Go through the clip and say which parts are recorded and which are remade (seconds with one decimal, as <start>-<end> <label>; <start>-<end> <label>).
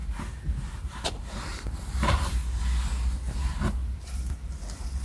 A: 0.0-2.6 remade; 2.6-3.8 recorded; 3.8-4.3 remade; 4.3-5.0 recorded